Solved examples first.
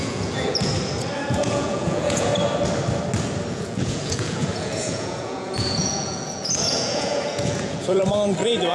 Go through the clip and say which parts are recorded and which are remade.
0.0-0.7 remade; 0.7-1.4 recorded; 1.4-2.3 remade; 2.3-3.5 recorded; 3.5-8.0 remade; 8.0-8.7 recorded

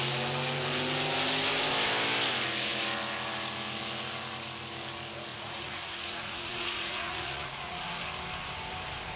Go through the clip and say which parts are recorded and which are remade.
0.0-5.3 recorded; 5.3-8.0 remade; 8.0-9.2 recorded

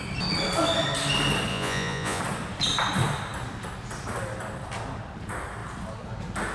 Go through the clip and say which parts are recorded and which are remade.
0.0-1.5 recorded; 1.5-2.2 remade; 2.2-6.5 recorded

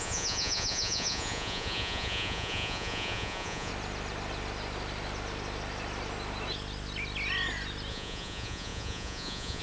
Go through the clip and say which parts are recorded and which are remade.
0.0-3.7 remade; 3.7-7.9 recorded; 7.9-9.6 remade

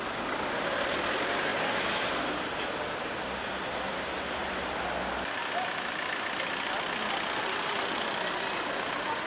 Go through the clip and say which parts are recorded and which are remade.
0.0-9.3 recorded

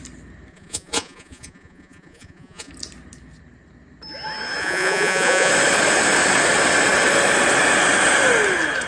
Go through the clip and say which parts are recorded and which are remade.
0.0-0.5 recorded; 0.5-2.7 remade; 2.7-4.6 recorded; 4.6-5.5 remade; 5.5-8.9 recorded

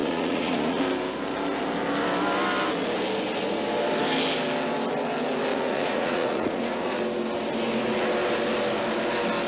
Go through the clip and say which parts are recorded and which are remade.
0.0-0.8 remade; 0.8-5.5 recorded; 5.5-7.0 remade; 7.0-9.5 recorded